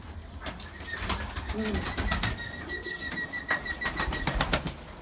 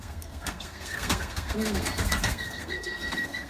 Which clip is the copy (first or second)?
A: second